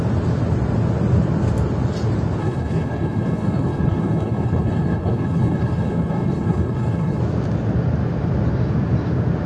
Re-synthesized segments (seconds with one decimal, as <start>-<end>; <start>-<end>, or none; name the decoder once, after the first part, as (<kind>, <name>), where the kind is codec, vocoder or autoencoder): 2.4-7.2 (codec, HILCodec)